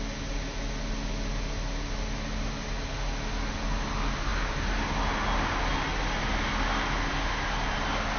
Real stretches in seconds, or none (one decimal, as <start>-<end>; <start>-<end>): 0.0-8.2